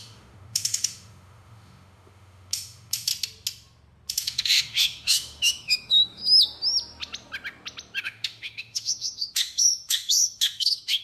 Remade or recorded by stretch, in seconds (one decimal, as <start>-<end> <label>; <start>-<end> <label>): 0.0-3.1 remade; 3.1-4.1 recorded; 4.1-6.2 remade; 6.2-8.0 recorded; 8.0-11.0 remade